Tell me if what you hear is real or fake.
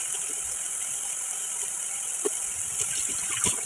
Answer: real